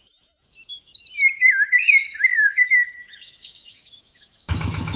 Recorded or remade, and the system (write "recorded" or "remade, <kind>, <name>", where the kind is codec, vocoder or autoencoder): remade, autoencoder, DAC-VAE